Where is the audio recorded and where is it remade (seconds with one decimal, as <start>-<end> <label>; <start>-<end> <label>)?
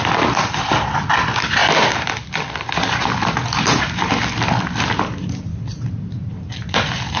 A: 0.0-7.2 recorded